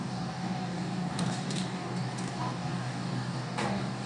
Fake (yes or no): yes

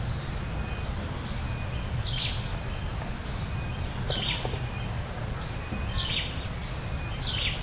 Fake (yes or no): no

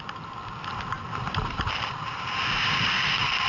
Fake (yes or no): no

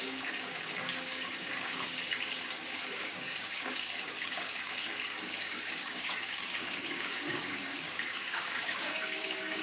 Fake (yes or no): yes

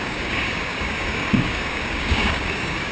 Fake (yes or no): yes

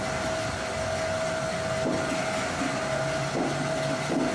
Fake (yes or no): no